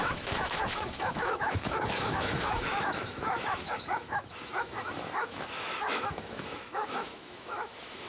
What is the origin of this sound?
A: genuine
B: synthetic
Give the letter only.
B